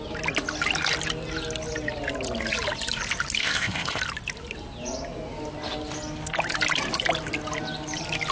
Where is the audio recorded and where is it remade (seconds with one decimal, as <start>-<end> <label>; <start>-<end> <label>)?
0.0-3.4 recorded; 3.4-4.0 remade; 4.0-8.3 recorded